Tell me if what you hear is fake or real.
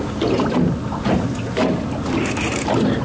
real